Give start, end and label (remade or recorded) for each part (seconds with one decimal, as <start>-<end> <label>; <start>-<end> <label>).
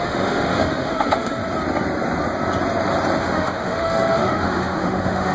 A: 0.0-1.4 remade; 1.4-3.2 recorded; 3.2-5.3 remade